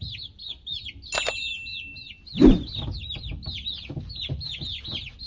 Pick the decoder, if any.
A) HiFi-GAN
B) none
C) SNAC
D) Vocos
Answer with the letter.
B